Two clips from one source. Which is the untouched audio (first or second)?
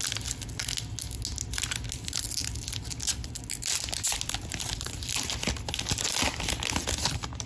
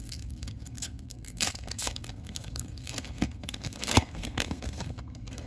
first